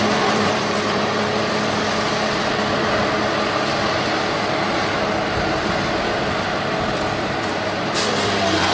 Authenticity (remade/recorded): remade